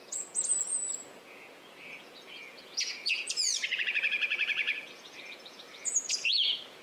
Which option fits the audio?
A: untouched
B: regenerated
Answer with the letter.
B